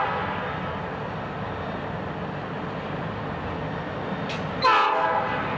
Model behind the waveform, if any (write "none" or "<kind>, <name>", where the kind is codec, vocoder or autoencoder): none